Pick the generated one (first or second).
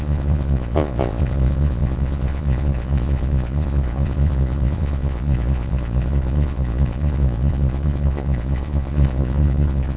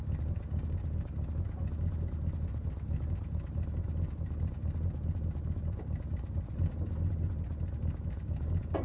first